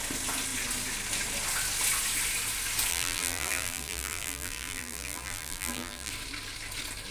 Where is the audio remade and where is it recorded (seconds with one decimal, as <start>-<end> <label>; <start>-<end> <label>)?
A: 0.0-2.9 recorded; 2.9-6.1 remade; 6.1-7.1 recorded